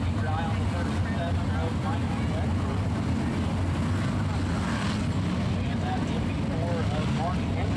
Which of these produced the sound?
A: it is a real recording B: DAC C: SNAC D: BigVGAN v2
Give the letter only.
A